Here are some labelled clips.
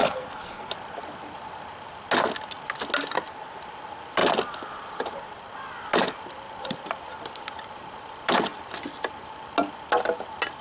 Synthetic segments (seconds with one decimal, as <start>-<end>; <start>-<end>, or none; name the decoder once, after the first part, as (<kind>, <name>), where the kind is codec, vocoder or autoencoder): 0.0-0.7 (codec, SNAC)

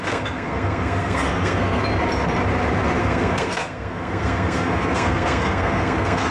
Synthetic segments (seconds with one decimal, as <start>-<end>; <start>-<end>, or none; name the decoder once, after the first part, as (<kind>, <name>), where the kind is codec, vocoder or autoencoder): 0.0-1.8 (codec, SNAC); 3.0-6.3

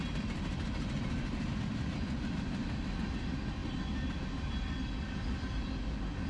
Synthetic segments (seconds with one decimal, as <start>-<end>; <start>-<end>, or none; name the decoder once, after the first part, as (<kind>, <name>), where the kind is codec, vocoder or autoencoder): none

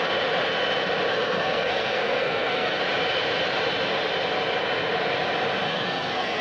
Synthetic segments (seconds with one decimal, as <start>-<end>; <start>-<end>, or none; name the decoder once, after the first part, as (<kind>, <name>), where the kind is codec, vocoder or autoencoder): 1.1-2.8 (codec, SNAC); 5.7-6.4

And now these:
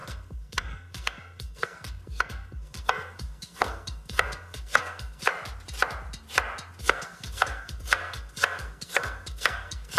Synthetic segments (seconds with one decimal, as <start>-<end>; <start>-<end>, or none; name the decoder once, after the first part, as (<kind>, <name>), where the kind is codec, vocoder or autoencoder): 0.0-5.3 (codec, SNAC); 6.8-10.0